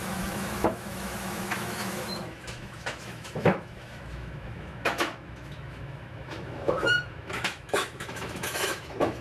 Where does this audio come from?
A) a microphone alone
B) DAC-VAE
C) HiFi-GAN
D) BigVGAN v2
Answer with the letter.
B